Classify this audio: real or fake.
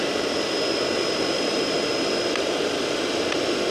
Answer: real